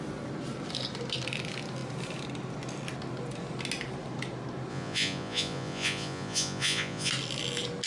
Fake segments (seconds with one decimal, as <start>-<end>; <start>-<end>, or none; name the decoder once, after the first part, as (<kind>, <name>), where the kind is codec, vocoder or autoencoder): 4.7-7.1 (vocoder, Vocos)